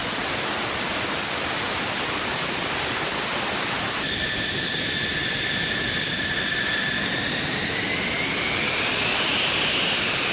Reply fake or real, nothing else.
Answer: real